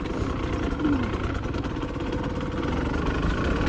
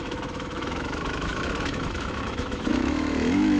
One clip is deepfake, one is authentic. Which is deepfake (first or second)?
second